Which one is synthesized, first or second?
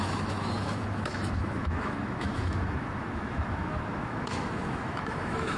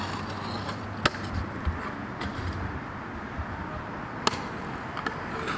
first